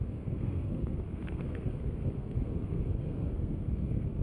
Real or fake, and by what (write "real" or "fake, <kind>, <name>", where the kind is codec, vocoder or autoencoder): fake, codec, SNAC